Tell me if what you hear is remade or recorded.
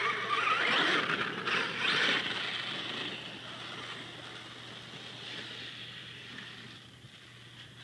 recorded